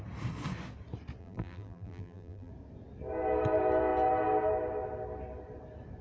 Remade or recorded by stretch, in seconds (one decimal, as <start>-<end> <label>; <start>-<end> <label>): 0.0-1.2 recorded; 1.2-2.5 remade; 2.5-6.0 recorded